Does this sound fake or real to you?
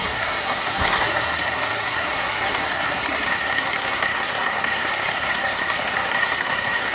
fake